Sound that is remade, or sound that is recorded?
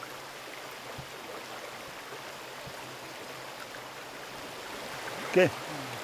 recorded